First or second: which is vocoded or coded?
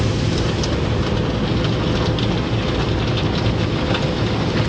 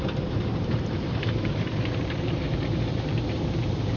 second